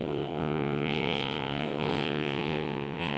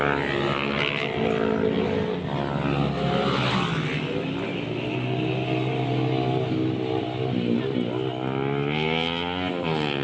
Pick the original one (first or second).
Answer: second